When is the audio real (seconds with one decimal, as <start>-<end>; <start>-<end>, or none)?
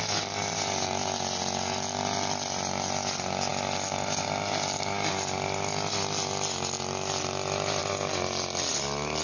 0.0-9.2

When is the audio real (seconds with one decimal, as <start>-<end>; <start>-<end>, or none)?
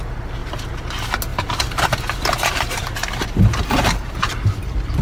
0.0-0.4; 0.9-1.3; 4.3-5.0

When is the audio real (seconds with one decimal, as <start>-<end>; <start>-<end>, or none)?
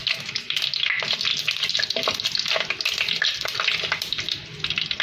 0.6-5.0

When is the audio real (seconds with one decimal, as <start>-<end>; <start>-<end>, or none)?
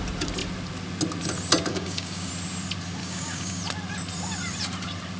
0.0-1.7; 2.3-3.0; 3.6-5.2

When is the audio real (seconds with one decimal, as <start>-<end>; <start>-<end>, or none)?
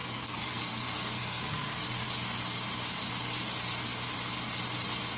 1.8-5.2